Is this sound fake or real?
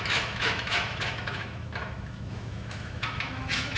fake